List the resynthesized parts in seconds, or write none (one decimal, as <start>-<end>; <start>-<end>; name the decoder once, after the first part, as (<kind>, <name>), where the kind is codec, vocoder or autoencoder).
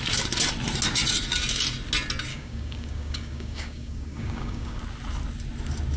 2.3-4.8 (codec, DAC)